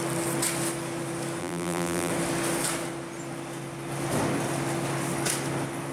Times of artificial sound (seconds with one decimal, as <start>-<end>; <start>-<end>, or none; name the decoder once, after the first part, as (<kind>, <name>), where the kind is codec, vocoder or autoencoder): 1.4-2.1 (vocoder, BigVGAN v2)